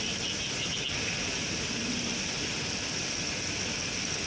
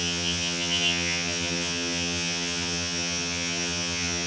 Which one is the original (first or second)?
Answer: first